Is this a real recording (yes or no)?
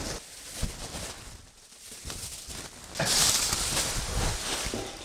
yes